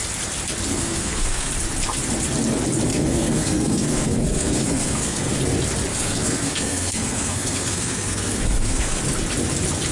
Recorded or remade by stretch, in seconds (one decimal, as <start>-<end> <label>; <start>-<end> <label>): 0.0-0.7 recorded; 0.7-1.5 remade; 1.5-2.9 recorded; 2.9-5.3 remade; 5.3-5.9 recorded; 5.9-9.0 remade; 9.0-9.9 recorded

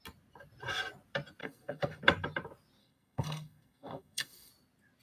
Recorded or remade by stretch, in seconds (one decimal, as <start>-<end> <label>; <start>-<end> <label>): 0.0-1.4 recorded; 1.4-2.0 remade; 2.0-2.8 recorded; 2.8-4.5 remade; 4.5-5.0 recorded

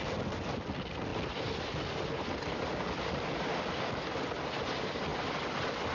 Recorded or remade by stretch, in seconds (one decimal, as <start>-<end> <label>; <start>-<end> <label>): 0.0-5.9 recorded

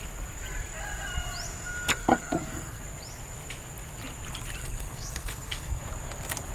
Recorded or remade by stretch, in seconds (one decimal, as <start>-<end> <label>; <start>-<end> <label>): 0.0-1.9 recorded; 1.9-2.8 remade; 2.8-4.6 recorded; 4.6-5.8 remade; 5.8-6.5 recorded

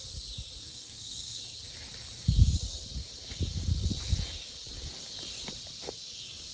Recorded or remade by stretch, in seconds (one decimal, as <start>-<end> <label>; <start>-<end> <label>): 0.0-0.6 recorded; 0.6-1.4 remade; 1.4-6.5 recorded

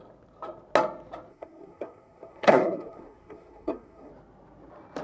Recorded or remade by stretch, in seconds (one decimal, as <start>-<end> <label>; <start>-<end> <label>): 0.0-1.3 recorded; 1.3-4.1 remade; 4.1-5.0 recorded